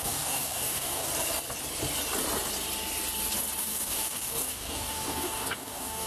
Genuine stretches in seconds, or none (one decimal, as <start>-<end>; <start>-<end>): 1.1-3.6